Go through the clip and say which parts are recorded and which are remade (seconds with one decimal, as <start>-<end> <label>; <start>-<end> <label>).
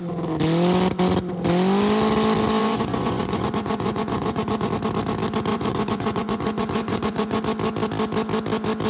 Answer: 0.0-2.6 recorded; 2.6-4.7 remade; 4.7-5.5 recorded; 5.5-7.4 remade; 7.4-8.9 recorded